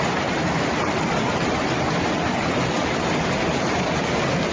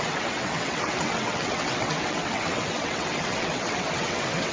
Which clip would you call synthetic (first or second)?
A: second